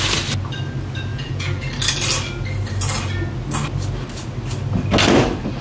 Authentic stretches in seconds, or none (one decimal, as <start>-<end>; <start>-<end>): 0.0-1.1; 1.7-5.6